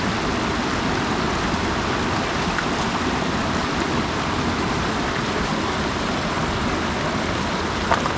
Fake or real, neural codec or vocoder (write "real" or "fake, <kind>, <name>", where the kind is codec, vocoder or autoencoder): real